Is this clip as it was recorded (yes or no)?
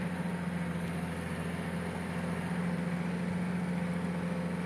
yes